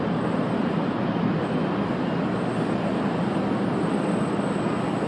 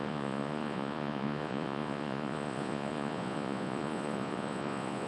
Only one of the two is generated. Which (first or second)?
second